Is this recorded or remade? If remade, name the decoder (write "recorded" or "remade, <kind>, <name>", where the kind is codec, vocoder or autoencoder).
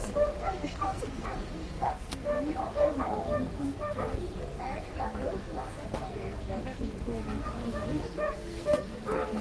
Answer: remade, codec, SNAC